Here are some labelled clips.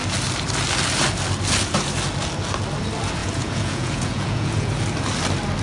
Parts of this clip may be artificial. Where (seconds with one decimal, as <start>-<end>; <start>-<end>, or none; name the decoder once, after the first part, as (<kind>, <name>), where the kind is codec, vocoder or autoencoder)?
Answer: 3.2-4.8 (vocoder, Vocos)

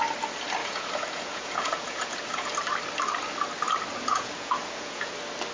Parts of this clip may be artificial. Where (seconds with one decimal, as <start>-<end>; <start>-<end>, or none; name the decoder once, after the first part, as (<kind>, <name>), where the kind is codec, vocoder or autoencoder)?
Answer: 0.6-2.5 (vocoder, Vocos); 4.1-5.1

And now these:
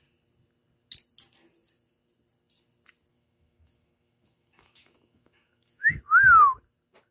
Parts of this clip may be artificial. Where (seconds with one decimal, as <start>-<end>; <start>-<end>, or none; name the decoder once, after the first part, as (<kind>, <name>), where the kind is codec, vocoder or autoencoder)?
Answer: 3.1-5.9 (autoencoder, DAC-VAE)